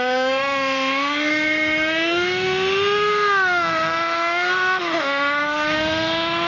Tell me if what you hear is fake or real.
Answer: fake